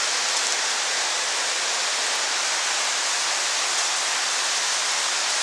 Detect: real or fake real